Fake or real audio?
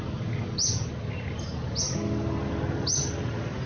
real